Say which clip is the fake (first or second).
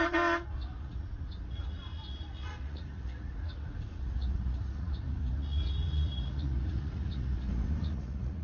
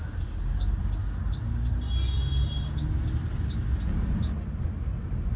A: first